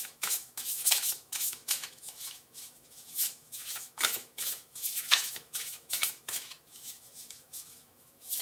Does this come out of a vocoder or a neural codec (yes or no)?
yes